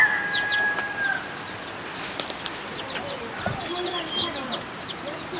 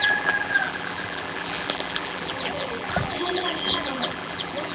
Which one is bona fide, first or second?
first